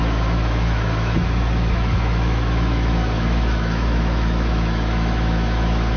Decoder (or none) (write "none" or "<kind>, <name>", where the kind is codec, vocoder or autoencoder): autoencoder, DAC-VAE